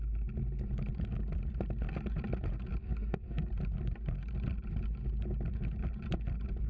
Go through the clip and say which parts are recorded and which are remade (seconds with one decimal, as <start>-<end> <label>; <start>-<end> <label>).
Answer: 0.0-2.8 recorded; 2.8-3.5 remade; 3.5-6.7 recorded